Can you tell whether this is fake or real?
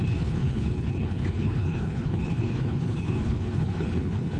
fake